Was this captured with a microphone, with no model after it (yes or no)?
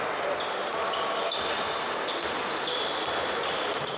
yes